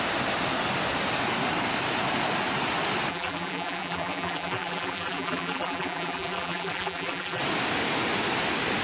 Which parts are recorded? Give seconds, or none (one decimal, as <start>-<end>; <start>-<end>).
0.0-3.1; 7.4-8.8